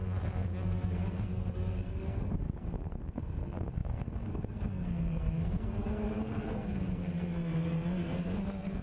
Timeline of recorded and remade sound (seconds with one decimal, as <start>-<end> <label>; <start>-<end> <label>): 0.0-8.8 remade